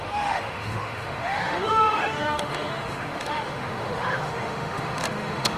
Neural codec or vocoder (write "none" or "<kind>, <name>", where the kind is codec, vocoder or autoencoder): autoencoder, DAC-VAE